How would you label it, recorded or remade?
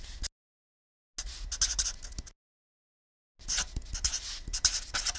recorded